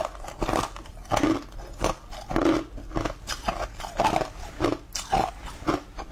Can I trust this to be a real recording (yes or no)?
yes